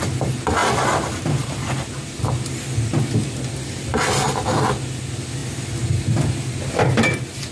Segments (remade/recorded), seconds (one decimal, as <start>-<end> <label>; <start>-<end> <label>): 0.0-7.5 recorded